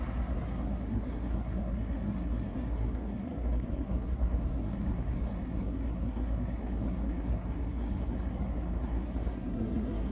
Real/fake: fake